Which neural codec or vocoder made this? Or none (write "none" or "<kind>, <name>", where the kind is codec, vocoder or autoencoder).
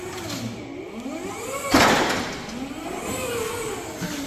none